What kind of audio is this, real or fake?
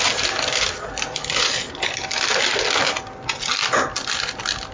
real